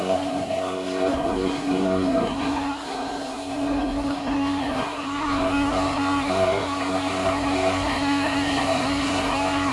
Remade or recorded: remade